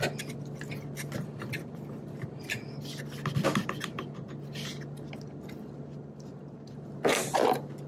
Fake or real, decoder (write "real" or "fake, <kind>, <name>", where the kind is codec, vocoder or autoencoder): real